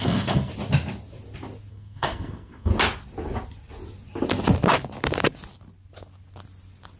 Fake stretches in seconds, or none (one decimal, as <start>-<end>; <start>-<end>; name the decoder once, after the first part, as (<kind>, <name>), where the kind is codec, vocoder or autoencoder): 0.0-0.5 (codec, SNAC); 1.7-2.7